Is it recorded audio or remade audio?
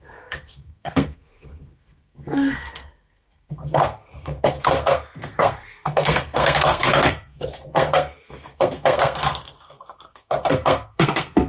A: remade